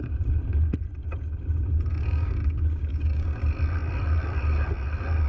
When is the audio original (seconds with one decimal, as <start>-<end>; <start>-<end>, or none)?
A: 0.0-1.9; 3.4-5.3

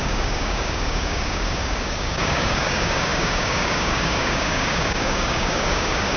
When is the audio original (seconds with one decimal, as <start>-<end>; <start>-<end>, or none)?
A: none